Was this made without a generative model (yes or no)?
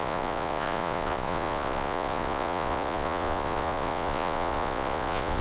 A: no